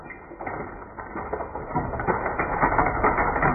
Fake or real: real